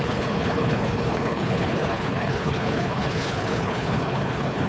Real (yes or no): no